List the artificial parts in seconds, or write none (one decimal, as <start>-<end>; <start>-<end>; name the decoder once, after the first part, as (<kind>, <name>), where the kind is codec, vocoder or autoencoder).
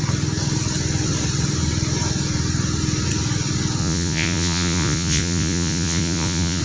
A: 3.8-6.6 (vocoder, Vocos)